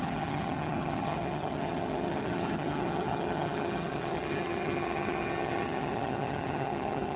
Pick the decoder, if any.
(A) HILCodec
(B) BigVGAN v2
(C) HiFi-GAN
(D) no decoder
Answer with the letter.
C